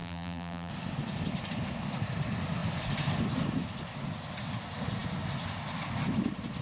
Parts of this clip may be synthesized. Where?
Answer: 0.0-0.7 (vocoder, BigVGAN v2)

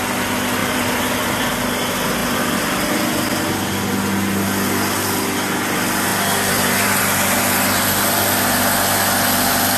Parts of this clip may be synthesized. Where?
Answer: 0.6-1.4 (vocoder, BigVGAN v2); 6.1-7.0

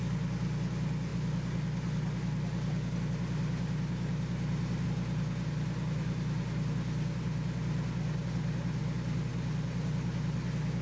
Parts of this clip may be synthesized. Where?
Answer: none

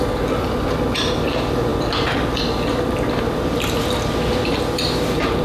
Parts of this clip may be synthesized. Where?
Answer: none

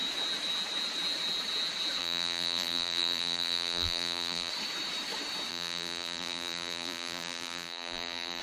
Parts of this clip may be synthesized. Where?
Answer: 2.0-4.5 (vocoder, BigVGAN v2); 5.5-8.4

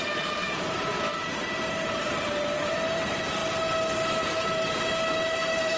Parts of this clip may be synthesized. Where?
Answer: 0.0-3.4 (vocoder, BigVGAN v2); 4.1-5.8

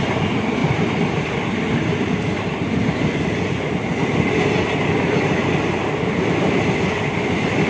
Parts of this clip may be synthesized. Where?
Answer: 0.6-1.3 (vocoder, BigVGAN v2)